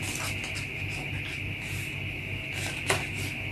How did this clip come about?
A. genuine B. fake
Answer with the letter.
A